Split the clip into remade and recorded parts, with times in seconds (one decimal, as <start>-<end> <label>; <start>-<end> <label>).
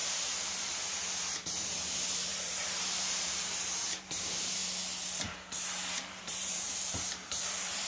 0.0-4.6 remade; 4.6-5.9 recorded; 5.9-7.9 remade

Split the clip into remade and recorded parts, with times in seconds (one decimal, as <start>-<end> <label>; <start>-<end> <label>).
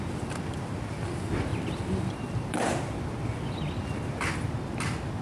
0.0-1.5 recorded; 1.5-3.6 remade; 3.6-5.2 recorded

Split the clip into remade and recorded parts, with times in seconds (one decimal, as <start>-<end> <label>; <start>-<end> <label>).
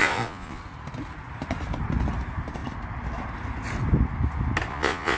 0.0-0.6 remade; 0.6-4.7 recorded; 4.7-5.2 remade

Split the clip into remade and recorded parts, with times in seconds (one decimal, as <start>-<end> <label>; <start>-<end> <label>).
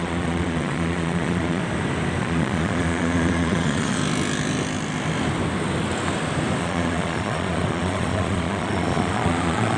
0.0-1.6 remade; 1.6-2.2 recorded; 2.2-4.0 remade; 4.0-6.6 recorded; 6.6-9.8 remade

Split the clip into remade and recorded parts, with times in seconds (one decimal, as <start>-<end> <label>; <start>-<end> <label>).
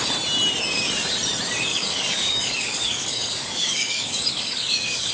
0.0-1.7 recorded; 1.7-5.1 remade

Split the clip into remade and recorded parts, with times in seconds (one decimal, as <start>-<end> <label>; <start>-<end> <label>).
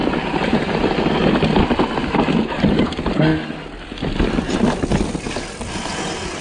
0.0-6.4 recorded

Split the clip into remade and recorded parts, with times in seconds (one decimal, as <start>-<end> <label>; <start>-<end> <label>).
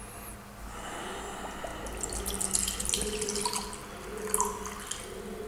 0.0-5.5 recorded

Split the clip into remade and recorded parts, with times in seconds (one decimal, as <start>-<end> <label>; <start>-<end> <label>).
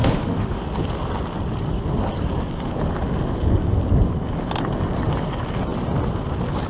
0.0-0.6 remade; 0.6-6.7 recorded